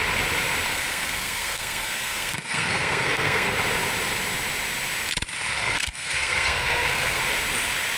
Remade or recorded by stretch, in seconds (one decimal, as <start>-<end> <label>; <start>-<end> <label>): 0.0-0.7 recorded; 0.7-3.5 remade; 3.5-5.6 recorded; 5.6-7.2 remade; 7.2-8.0 recorded